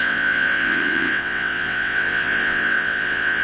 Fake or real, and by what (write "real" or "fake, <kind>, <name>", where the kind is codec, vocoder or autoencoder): fake, vocoder, WaveNeXt